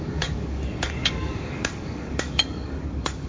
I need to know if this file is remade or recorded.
remade